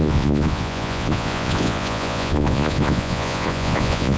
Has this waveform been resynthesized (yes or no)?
yes